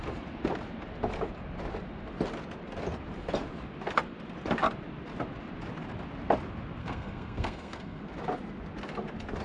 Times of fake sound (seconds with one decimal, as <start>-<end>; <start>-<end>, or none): 6.8-8.0